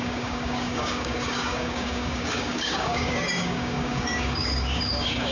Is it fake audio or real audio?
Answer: fake